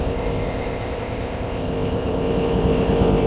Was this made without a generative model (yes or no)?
no